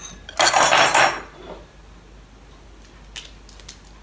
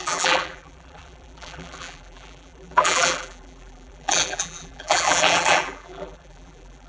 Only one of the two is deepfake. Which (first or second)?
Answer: second